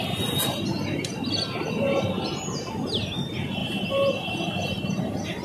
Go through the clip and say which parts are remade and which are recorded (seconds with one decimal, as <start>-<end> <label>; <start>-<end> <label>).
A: 0.0-3.6 recorded; 3.6-4.5 remade; 4.5-5.4 recorded